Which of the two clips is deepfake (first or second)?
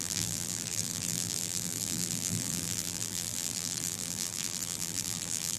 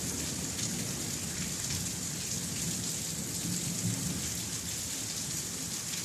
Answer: first